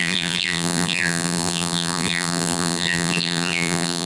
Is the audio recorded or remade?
remade